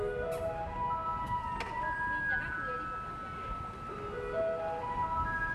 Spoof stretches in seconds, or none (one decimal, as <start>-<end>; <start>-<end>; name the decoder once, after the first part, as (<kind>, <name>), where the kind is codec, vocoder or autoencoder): none